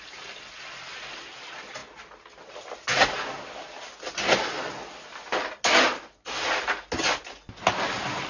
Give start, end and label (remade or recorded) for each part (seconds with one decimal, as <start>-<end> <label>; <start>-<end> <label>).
0.0-8.3 recorded